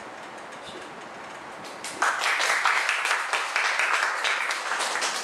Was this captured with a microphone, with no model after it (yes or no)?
yes